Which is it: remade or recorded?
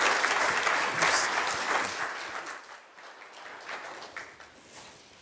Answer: recorded